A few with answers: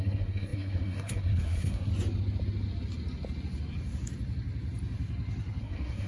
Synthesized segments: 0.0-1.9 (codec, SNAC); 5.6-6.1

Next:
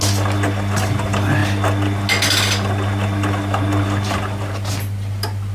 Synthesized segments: none

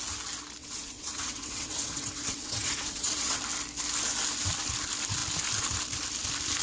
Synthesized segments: 0.6-3.4 (vocoder, WaveNeXt)

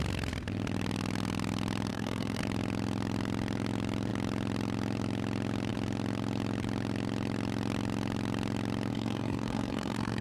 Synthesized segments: 1.9-2.4 (codec, SNAC); 8.9-10.2